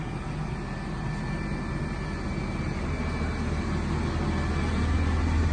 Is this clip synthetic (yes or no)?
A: no